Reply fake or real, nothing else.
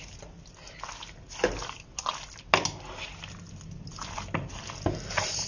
real